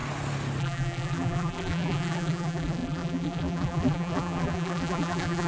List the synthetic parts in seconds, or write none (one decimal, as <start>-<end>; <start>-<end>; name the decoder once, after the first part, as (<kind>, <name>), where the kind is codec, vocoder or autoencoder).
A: 0.6-5.5 (vocoder, BigVGAN v2)